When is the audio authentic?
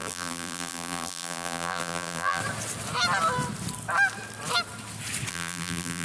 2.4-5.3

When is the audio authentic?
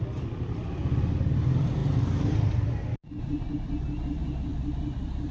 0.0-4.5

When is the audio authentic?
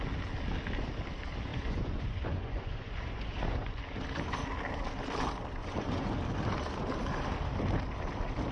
0.0-1.5; 3.8-5.6; 6.1-8.5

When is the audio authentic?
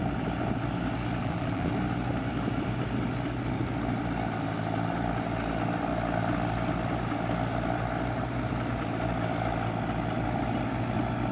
0.0-1.2; 1.7-11.3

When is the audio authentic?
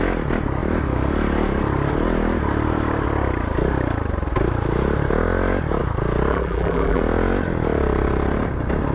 0.0-6.3; 7.0-8.9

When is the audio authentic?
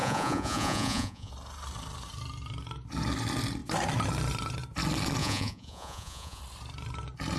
1.3-5.2; 6.4-7.4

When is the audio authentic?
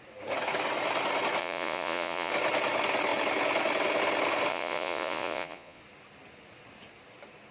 0.0-1.4; 2.3-4.5; 5.8-7.5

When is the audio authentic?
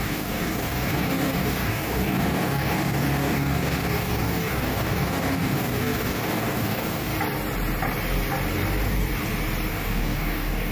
7.1-9.7